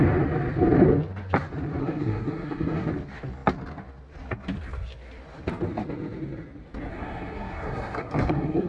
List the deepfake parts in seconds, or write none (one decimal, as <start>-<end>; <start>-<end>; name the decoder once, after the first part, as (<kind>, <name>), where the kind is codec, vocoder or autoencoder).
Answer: 1.8-2.9 (codec, SNAC); 6.9-8.7